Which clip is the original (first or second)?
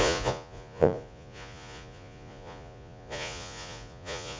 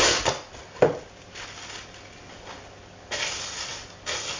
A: second